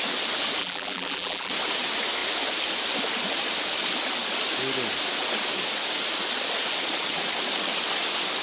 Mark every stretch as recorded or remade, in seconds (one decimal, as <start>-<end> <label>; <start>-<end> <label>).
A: 0.0-0.6 recorded; 0.6-1.5 remade; 1.5-8.4 recorded